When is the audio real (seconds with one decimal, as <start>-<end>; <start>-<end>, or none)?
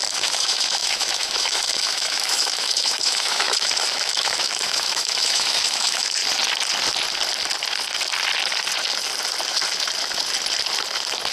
6.2-11.3